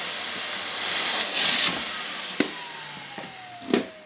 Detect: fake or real real